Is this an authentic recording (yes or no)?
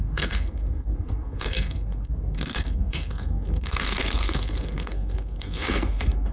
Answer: no